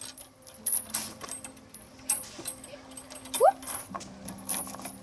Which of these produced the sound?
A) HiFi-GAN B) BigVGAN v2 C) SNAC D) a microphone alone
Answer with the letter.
B